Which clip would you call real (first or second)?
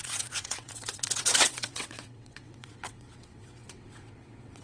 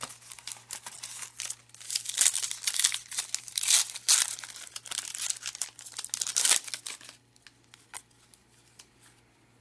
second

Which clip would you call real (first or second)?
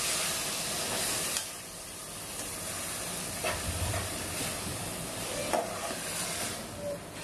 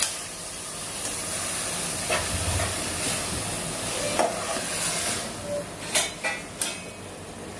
second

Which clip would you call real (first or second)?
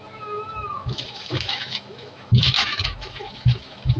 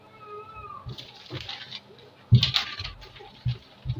second